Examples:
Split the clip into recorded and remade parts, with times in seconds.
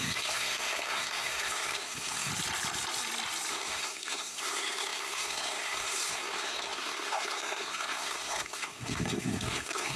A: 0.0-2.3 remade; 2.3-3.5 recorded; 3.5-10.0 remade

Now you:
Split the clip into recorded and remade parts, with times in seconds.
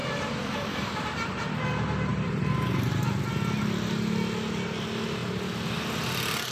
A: 0.0-1.7 remade; 1.7-2.1 recorded; 2.1-3.0 remade; 3.0-6.5 recorded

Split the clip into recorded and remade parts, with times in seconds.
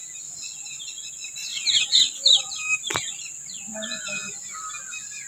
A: 0.0-5.3 recorded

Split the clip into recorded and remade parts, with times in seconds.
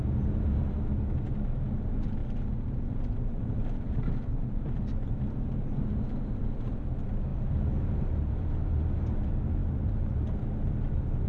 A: 0.0-11.3 remade